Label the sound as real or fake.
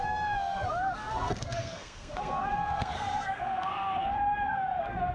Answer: fake